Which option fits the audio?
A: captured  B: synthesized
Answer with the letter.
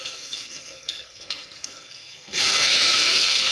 B